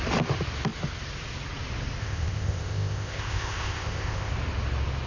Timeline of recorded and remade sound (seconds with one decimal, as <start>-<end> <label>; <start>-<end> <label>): 0.0-2.0 recorded; 2.0-4.3 remade; 4.3-5.1 recorded